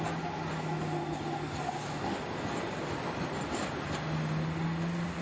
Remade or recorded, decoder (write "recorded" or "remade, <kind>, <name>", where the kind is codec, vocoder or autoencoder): recorded